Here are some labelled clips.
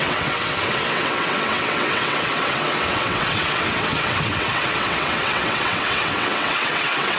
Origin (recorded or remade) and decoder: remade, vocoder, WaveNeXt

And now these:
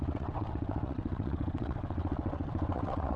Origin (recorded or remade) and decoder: remade, vocoder, WaveNeXt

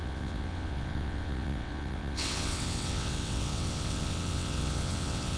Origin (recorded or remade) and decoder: remade, vocoder, WaveNeXt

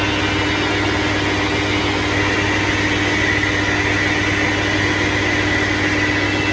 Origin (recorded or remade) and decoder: recorded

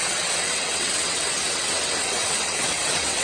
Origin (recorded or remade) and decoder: remade, vocoder, WaveNeXt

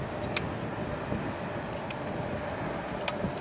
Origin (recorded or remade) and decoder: recorded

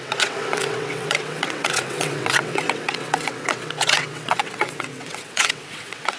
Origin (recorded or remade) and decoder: remade, vocoder, WaveNeXt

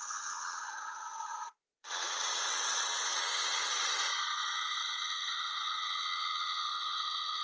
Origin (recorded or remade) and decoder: remade, vocoder, WaveNeXt